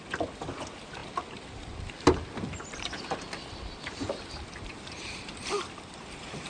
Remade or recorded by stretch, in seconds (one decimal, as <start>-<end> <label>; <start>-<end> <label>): 0.0-6.5 recorded